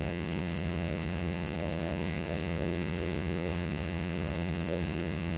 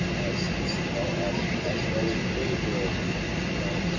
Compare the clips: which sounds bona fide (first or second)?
second